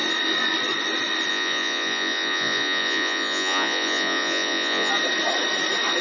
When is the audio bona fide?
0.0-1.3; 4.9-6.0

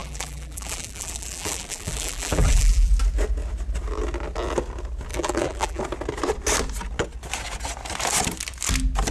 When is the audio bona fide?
2.9-5.1; 5.8-9.1

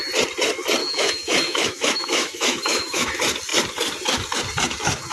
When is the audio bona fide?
0.0-0.8; 3.1-5.1

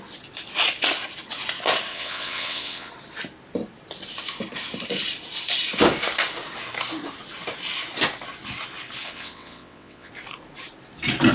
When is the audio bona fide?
0.0-1.9; 2.9-9.0; 10.1-11.3

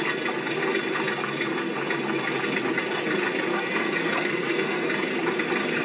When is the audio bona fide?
0.0-3.5; 4.9-5.8

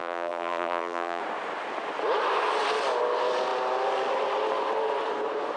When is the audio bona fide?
1.2-5.6